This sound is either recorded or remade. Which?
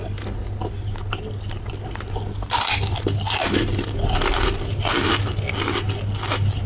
recorded